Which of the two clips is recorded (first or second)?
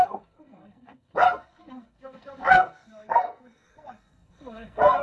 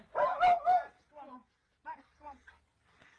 second